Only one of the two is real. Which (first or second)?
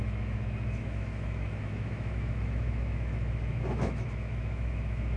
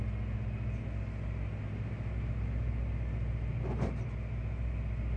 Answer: second